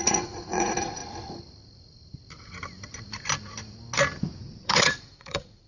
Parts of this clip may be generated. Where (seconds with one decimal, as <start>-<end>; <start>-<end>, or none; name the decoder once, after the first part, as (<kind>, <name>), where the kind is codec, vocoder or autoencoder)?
0.0-1.0 (vocoder, Vocos); 4.4-5.7

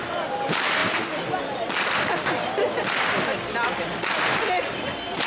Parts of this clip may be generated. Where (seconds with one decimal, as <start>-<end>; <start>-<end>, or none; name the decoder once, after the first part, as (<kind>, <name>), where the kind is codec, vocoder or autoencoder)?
none

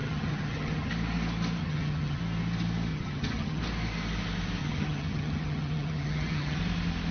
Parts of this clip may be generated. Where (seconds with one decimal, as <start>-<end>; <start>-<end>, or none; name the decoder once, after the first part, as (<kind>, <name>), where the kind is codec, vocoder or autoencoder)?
0.0-0.9 (vocoder, HiFi-GAN); 1.6-2.2; 2.9-3.6; 4.6-6.6

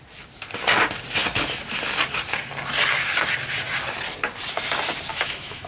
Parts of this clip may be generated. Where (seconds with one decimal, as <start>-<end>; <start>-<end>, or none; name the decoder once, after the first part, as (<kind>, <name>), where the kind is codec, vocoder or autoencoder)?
5.1-5.7 (autoencoder, DAC-VAE)